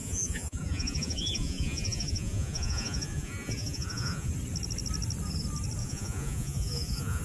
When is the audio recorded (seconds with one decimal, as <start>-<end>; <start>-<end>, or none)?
4.3-5.8